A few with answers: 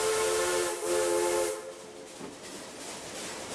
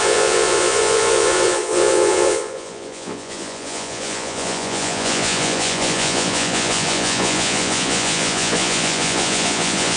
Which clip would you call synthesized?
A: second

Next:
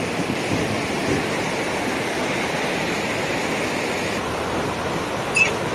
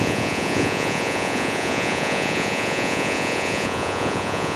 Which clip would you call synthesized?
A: second